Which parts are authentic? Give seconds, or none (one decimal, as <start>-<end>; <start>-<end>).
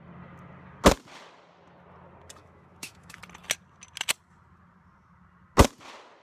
0.0-2.4; 3.2-6.2